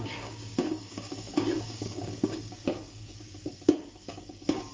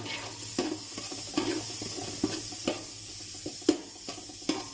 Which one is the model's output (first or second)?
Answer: first